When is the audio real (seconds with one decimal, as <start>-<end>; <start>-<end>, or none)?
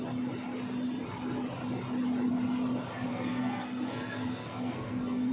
0.0-3.1